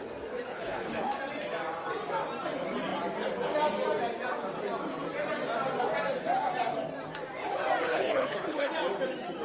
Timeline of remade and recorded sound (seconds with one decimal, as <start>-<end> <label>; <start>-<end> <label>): 0.0-0.5 recorded; 0.5-1.1 remade; 1.1-7.9 recorded; 7.9-8.7 remade; 8.7-9.4 recorded